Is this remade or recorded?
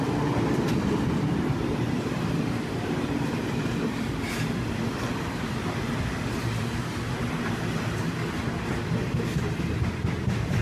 remade